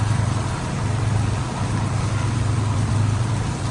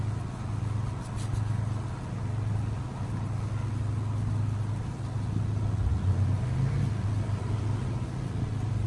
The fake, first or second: first